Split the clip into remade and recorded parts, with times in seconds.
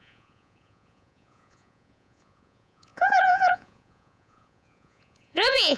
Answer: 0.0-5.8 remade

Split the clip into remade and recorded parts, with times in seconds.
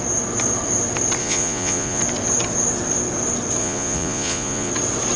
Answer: 0.0-1.2 recorded; 1.2-2.0 remade; 2.0-3.6 recorded; 3.6-4.7 remade; 4.7-5.2 recorded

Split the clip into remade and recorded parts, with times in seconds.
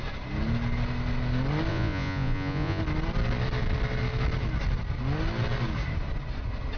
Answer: 0.0-1.7 recorded; 1.7-2.8 remade; 2.8-6.8 recorded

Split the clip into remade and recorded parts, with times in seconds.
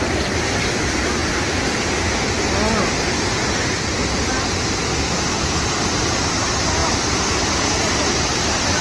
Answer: 0.0-8.8 recorded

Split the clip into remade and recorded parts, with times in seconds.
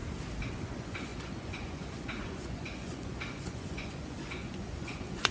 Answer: 0.0-0.5 recorded; 0.5-5.3 remade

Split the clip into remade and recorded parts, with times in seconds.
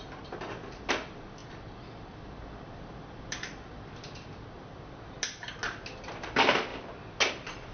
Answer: 0.0-7.7 recorded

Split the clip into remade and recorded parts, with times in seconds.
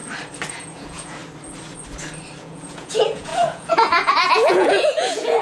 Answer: 0.0-0.5 recorded; 0.5-1.2 remade; 1.2-2.4 recorded; 2.4-5.4 remade